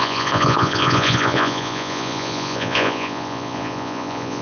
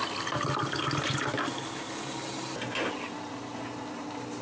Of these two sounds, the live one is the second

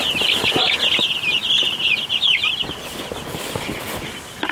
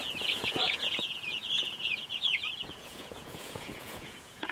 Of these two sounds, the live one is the first